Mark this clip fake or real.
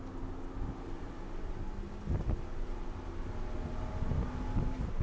real